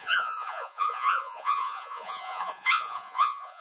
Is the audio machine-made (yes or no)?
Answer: yes